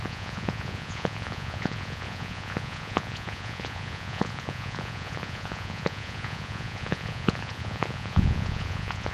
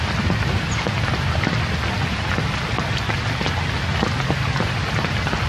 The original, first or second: second